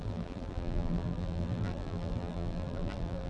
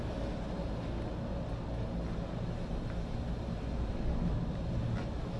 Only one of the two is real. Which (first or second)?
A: second